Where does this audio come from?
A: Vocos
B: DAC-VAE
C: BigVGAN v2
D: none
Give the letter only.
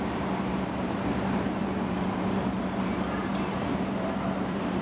C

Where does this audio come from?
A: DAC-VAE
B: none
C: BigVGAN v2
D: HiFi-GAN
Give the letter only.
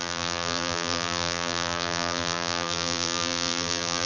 C